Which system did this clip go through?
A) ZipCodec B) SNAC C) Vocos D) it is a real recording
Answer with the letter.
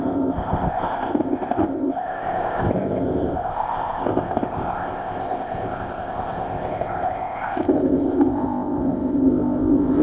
A